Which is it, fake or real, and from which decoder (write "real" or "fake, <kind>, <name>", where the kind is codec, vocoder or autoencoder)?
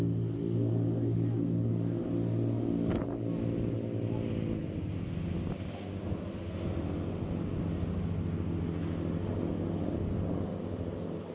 real